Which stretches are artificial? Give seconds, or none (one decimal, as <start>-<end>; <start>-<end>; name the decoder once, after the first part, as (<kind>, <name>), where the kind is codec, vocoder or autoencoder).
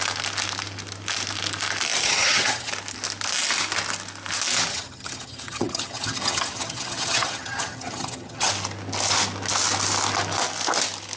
2.0-2.7 (vocoder, HiFi-GAN); 4.7-8.5